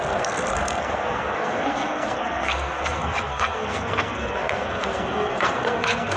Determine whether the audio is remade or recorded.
remade